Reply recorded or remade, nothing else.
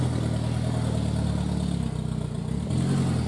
recorded